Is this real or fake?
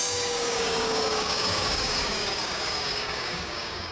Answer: fake